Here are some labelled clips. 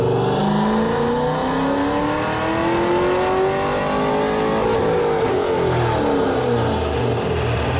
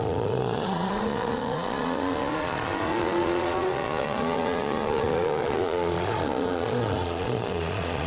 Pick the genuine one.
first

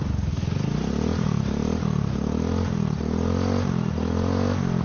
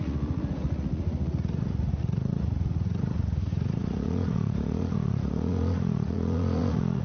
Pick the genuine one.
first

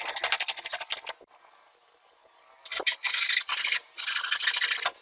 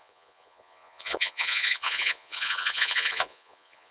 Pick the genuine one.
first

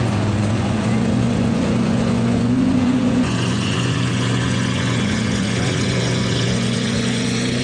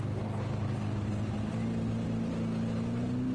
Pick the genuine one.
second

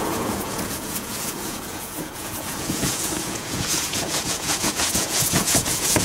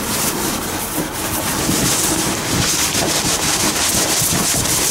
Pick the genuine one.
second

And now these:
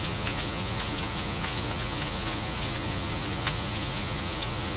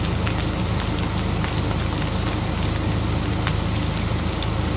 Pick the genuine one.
second